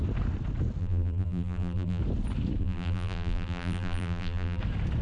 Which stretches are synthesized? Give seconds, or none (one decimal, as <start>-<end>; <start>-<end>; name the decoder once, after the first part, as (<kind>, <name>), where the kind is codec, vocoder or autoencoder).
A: 0.8-2.0 (vocoder, BigVGAN v2); 2.6-4.6